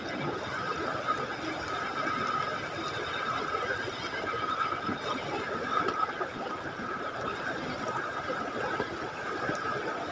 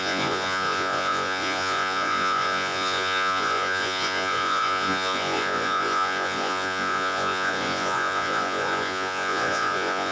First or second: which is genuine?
first